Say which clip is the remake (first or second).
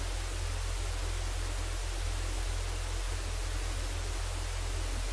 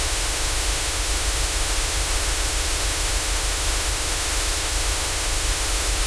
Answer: second